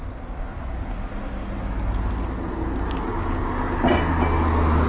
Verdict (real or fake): real